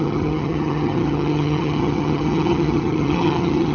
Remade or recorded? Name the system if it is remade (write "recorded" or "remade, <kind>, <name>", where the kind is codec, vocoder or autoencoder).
remade, vocoder, HiFi-GAN